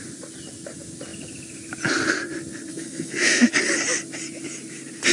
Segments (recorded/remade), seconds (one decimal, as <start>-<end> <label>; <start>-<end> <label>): 0.0-2.7 recorded; 2.7-3.5 remade; 3.5-5.1 recorded